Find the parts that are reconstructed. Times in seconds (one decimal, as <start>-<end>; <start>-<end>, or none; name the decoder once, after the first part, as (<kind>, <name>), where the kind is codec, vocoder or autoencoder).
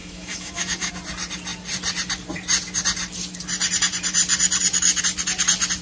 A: 0.0-0.9 (autoencoder, DAC-VAE)